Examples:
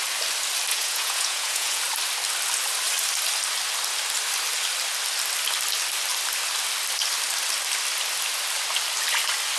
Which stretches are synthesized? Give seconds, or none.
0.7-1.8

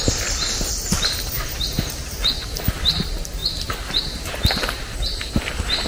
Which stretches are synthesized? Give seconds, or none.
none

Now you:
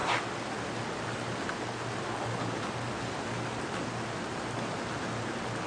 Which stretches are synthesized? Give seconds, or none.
none

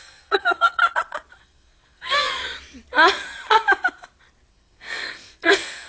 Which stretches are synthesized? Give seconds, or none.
0.0-0.8; 1.4-2.4; 4.5-5.9

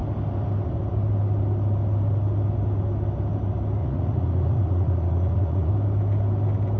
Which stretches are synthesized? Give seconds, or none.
3.8-5.7

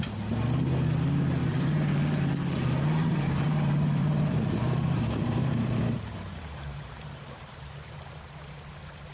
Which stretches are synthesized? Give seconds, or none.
1.4-1.9; 3.0-8.1

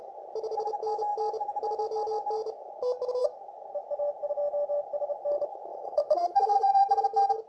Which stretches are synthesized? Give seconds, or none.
5.7-6.9